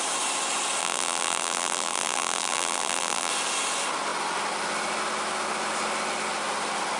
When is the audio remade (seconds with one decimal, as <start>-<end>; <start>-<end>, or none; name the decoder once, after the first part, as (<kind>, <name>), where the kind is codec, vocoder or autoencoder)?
0.8-3.3 (vocoder, BigVGAN v2)